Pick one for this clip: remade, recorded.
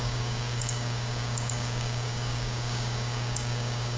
remade